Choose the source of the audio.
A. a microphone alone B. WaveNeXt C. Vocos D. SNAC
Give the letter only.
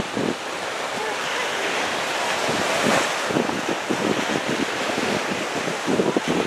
A